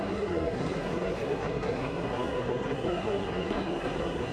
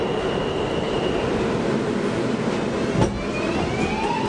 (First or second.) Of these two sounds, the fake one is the first